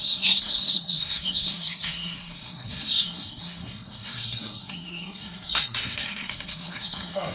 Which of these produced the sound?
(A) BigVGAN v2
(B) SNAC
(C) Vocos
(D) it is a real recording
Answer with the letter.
B